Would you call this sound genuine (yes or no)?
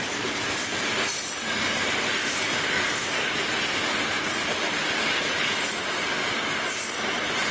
yes